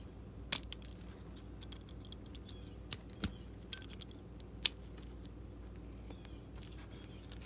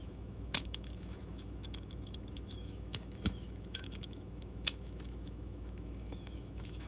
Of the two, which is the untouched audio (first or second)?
first